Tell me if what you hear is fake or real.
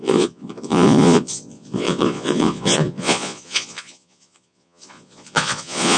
fake